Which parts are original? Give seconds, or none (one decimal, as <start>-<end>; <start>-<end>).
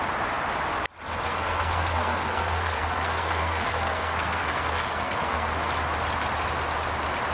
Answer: 0.0-1.3; 5.7-7.3